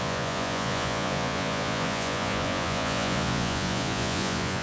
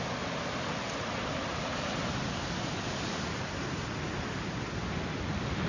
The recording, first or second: second